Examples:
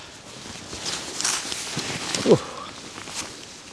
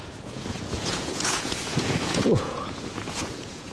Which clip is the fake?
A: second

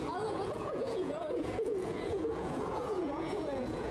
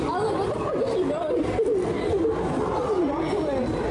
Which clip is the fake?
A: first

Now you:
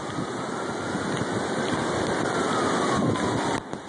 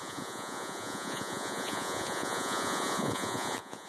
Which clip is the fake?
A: second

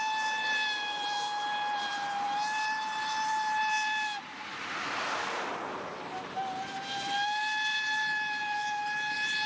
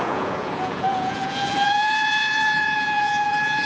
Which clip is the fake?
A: second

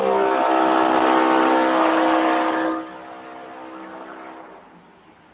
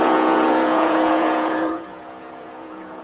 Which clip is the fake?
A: second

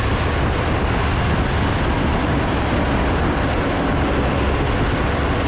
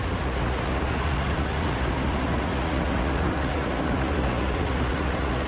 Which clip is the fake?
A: second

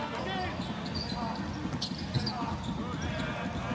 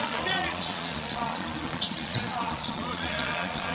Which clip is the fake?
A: second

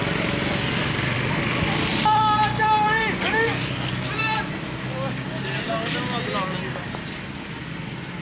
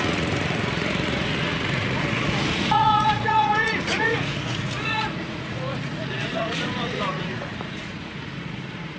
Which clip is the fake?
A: second